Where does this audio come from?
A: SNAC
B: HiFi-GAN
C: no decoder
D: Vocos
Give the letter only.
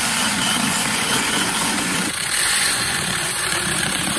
D